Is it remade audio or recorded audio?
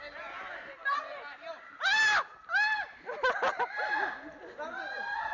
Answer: recorded